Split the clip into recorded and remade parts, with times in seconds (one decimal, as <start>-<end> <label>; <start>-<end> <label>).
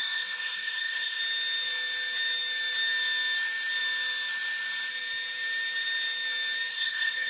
0.0-1.2 remade; 1.2-6.7 recorded; 6.7-7.3 remade